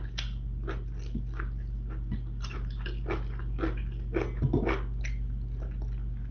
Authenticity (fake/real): real